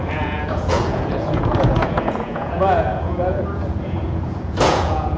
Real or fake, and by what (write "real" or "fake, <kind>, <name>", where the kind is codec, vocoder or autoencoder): fake, vocoder, Vocos